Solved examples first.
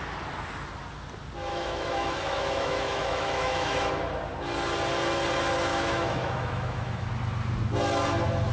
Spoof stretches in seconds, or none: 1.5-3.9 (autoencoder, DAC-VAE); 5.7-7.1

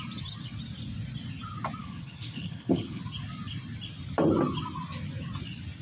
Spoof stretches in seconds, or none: 1.8-3.0 (codec, HILCodec)

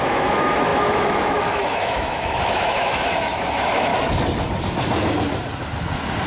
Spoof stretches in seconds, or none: 0.0-3.9 (autoencoder, DAC-VAE)

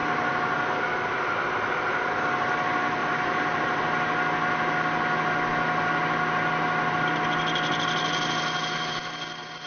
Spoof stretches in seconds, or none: 3.0-3.8 (vocoder, BigVGAN v2)

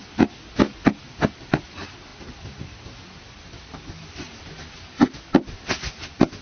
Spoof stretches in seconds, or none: none